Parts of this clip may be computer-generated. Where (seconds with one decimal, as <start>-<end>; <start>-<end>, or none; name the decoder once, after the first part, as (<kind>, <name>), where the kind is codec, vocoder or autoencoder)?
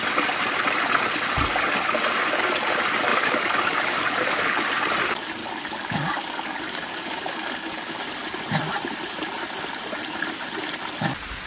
3.1-4.6 (codec, DAC); 5.4-8.0